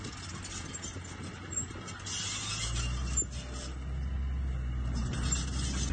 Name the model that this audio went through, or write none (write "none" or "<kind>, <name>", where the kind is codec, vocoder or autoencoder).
none